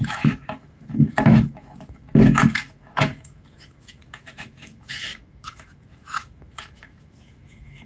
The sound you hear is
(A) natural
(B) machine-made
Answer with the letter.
B